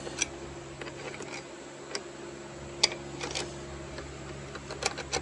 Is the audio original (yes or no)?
yes